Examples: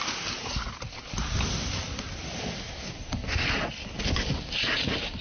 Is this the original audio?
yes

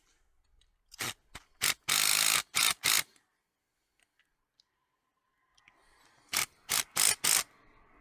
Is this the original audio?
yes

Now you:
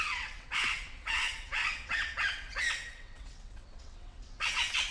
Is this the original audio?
no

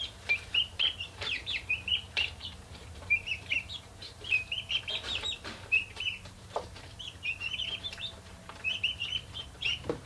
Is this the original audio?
no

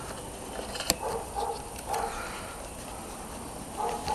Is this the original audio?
yes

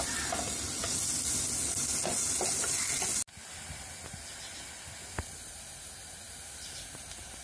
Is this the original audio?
yes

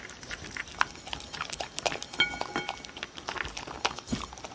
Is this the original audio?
yes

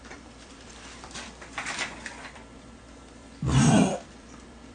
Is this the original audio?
no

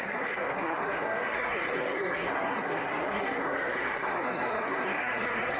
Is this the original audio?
no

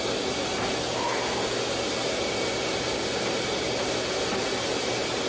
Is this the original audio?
yes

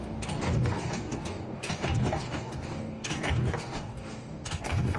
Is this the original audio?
no